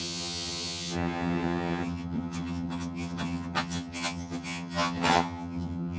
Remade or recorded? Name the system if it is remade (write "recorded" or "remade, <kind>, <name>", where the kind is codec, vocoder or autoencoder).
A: remade, vocoder, HiFi-GAN